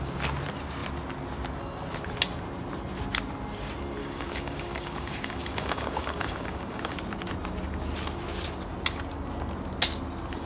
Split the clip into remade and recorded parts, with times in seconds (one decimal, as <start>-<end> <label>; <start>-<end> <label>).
0.0-4.0 recorded; 4.0-6.9 remade; 6.9-10.5 recorded